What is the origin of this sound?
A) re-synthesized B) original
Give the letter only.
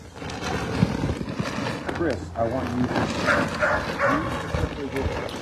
B